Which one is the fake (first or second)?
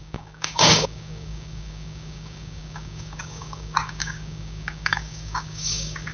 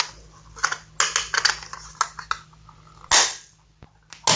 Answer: first